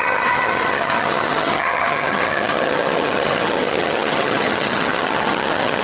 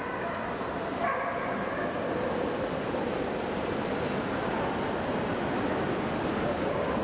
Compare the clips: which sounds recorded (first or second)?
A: second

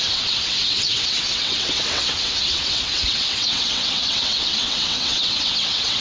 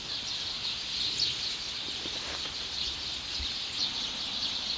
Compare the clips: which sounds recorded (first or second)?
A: second